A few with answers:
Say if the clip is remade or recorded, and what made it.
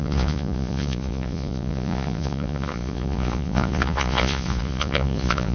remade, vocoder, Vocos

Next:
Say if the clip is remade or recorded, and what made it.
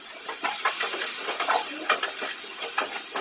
recorded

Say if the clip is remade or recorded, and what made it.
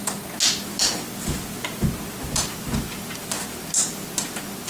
recorded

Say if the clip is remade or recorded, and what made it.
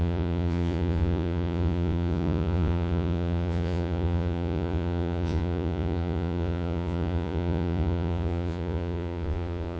remade, vocoder, Vocos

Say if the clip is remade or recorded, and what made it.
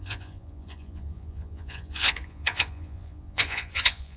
remade, vocoder, Vocos